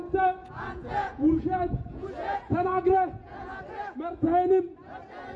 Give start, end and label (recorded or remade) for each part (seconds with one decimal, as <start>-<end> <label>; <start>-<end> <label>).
0.0-0.4 recorded; 0.4-3.6 remade; 3.6-5.4 recorded